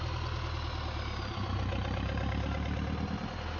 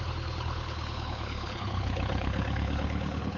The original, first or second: first